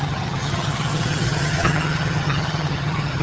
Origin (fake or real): fake